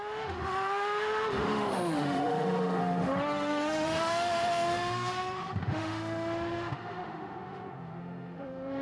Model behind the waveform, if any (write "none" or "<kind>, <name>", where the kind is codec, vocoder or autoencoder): autoencoder, DAC-VAE